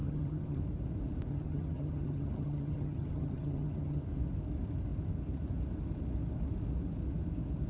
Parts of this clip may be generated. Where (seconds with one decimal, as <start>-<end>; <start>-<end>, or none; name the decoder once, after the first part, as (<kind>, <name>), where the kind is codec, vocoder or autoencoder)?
0.0-0.6 (vocoder, HiFi-GAN); 1.3-4.0